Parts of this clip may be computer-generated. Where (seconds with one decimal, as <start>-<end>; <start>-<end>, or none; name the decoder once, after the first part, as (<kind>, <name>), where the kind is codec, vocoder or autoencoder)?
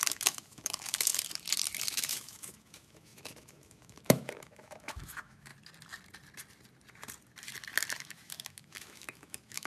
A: 0.0-1.1 (autoencoder, DAC-VAE); 1.9-5.5; 8.0-9.7